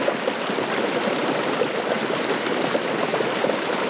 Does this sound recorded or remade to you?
recorded